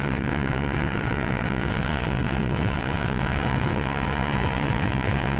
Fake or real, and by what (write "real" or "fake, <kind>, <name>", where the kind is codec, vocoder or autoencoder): fake, vocoder, WaveNeXt